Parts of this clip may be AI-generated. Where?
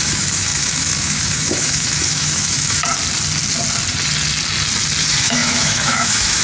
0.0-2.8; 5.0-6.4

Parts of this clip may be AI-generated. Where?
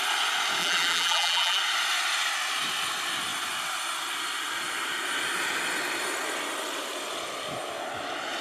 0.6-1.6